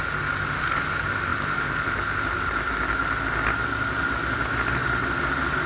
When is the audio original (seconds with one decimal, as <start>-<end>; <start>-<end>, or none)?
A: 0.0-5.7